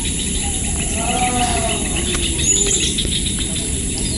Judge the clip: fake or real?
real